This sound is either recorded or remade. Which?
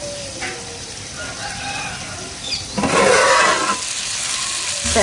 recorded